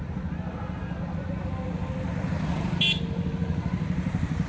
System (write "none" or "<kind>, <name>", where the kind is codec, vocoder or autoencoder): none